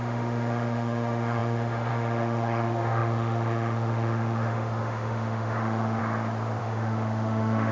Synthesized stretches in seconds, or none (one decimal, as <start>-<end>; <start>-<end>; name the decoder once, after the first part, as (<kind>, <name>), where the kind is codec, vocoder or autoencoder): 0.0-6.0 (autoencoder, DAC-VAE); 6.6-7.7